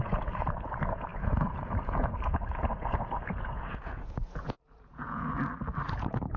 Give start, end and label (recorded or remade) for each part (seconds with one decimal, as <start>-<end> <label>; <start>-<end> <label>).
0.0-5.4 remade; 5.4-5.9 recorded; 5.9-6.4 remade